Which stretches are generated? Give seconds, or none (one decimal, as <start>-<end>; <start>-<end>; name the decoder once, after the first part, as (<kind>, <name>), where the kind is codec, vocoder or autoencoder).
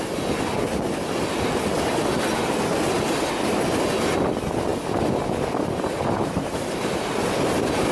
none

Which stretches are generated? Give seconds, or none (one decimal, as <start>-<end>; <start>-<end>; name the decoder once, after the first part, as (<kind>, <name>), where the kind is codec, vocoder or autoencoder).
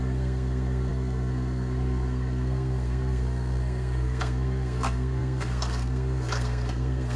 0.0-7.2 (codec, SNAC)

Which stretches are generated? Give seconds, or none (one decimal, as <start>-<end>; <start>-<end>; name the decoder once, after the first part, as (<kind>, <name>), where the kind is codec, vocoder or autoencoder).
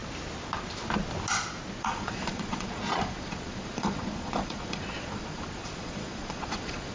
1.8-6.9 (vocoder, Vocos)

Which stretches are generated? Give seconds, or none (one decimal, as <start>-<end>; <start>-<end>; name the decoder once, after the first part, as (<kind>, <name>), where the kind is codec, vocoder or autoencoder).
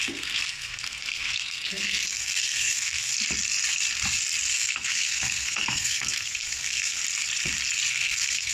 0.0-3.1 (codec, SNAC); 4.5-7.0; 7.9-8.5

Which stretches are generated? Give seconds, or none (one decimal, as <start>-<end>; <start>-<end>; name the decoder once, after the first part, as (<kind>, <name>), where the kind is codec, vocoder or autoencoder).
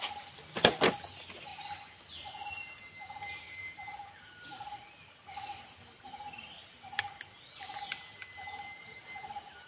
none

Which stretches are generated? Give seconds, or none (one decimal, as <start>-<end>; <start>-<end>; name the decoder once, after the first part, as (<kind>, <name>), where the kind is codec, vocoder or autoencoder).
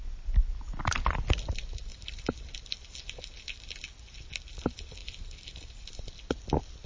1.9-2.4 (vocoder, BigVGAN v2); 5.0-6.0